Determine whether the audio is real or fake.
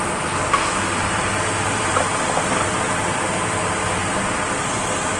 real